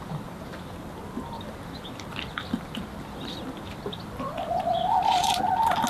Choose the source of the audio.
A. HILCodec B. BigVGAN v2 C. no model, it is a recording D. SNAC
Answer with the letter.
C